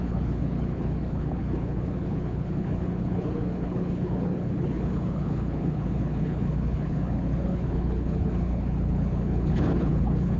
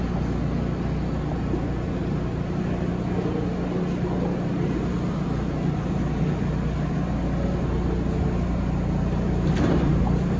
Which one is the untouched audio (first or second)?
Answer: second